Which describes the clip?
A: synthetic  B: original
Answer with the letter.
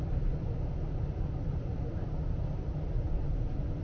B